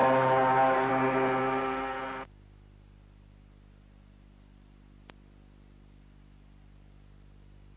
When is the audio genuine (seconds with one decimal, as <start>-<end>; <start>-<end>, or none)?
0.0-1.4; 2.0-7.8